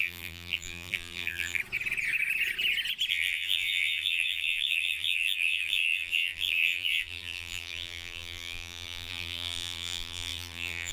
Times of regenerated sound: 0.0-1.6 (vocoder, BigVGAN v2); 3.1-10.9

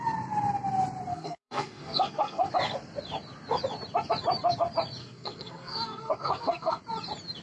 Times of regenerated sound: 1.1-2.5 (codec, SNAC); 5.0-6.8

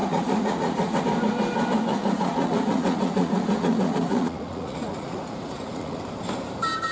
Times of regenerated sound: 0.0-1.0 (vocoder, Vocos); 1.9-6.0

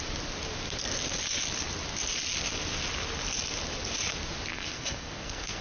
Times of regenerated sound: 4.5-5.6 (codec, SNAC)

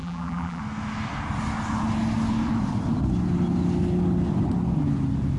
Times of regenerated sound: 0.0-0.6 (vocoder, BigVGAN v2)

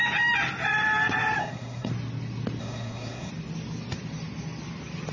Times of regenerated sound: 1.4-1.9 (codec, SNAC); 2.6-3.3

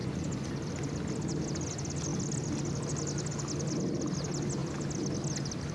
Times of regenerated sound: 0.0-0.5 (vocoder, Vocos)

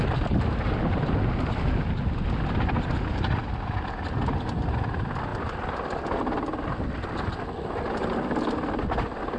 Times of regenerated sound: none